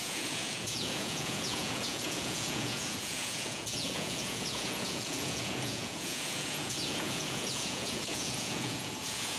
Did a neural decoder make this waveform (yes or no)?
yes